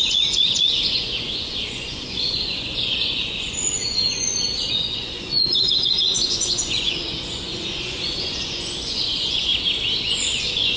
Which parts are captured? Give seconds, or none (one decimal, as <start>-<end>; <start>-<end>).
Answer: 9.5-10.0